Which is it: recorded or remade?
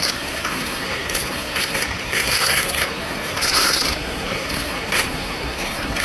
remade